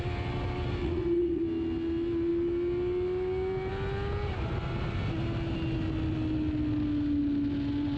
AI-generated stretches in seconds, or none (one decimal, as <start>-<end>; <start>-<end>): 0.8-1.4